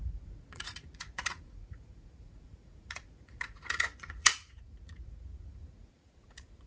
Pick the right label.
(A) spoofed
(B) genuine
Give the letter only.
A